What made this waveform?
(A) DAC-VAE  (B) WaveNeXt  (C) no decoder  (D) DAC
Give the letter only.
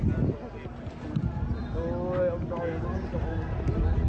C